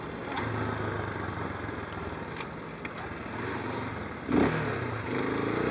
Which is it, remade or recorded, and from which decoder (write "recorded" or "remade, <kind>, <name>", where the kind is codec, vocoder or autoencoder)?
recorded